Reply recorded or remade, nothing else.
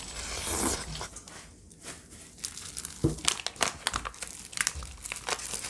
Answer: recorded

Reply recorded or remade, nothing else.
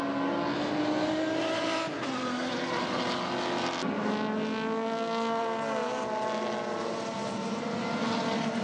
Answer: recorded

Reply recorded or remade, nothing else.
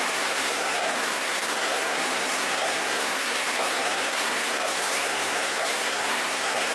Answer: remade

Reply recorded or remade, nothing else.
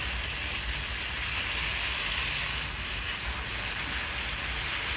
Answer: recorded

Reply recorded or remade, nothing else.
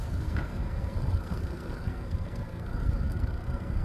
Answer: remade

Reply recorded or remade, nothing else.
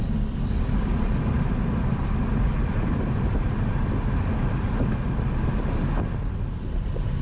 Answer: recorded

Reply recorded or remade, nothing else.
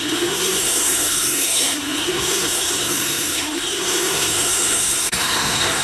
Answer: remade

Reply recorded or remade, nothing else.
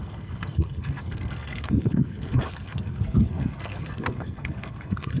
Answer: remade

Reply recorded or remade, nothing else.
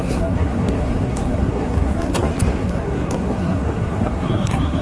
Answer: remade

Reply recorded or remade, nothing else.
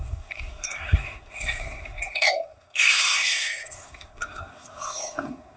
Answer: remade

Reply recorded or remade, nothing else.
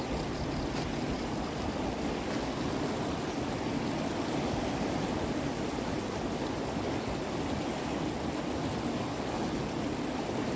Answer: recorded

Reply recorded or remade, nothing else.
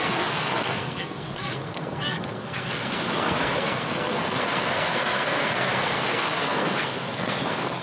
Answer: remade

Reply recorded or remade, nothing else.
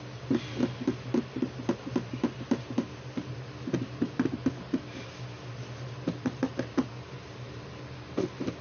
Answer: recorded